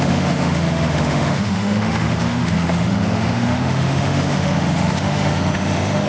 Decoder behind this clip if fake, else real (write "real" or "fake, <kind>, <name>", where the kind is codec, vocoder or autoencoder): fake, autoencoder, DAC-VAE